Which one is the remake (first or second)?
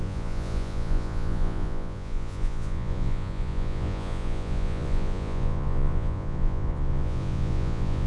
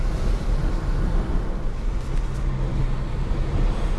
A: first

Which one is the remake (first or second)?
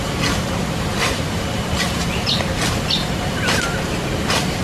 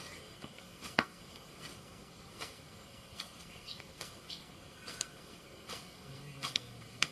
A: second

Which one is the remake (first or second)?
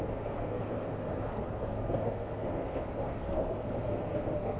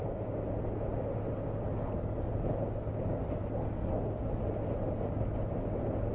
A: first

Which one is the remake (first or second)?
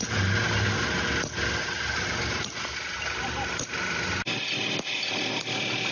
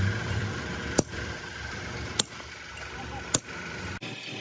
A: second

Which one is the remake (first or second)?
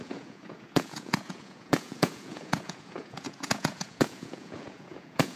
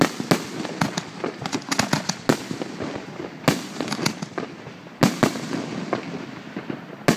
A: first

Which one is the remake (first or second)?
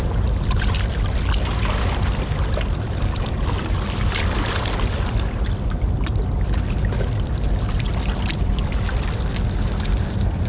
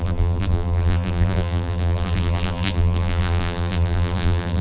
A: second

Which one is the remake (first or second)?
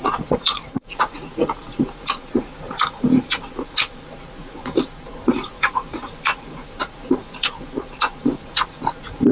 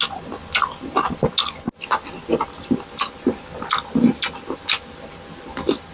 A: first